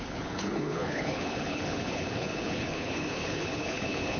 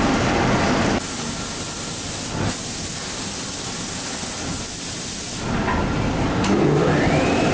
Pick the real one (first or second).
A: second